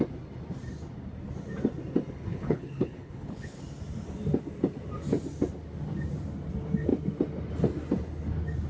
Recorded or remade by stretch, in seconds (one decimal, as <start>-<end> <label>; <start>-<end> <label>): 0.0-2.3 recorded; 2.3-3.6 remade; 3.6-8.7 recorded